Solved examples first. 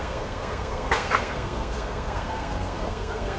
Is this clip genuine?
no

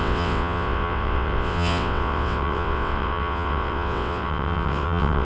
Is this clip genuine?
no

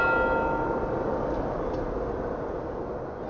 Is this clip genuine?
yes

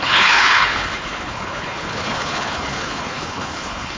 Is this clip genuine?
no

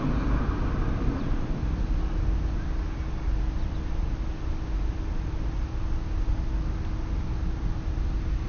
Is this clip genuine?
yes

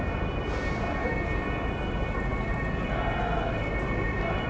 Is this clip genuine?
yes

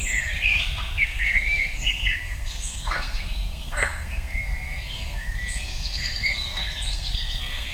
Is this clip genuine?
no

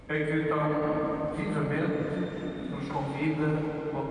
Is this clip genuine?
yes